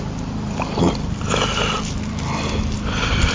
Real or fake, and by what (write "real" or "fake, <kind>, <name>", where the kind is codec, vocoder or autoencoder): real